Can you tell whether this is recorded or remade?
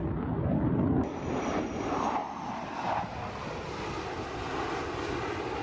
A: recorded